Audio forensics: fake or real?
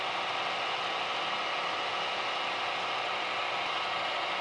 real